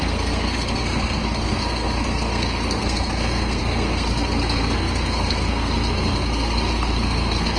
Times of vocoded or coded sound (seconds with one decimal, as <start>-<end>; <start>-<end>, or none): 0.0-7.6